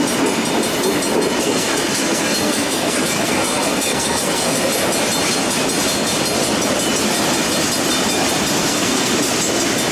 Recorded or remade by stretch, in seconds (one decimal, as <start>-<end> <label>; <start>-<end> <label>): 0.0-1.4 recorded; 1.4-4.6 remade; 4.6-8.6 recorded; 8.6-9.1 remade; 9.1-9.9 recorded